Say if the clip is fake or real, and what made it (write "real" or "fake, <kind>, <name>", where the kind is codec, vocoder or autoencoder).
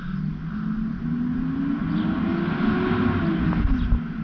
real